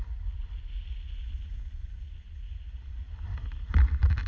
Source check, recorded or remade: recorded